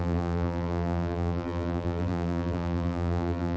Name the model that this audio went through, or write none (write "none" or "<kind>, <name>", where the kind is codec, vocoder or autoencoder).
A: vocoder, BigVGAN v2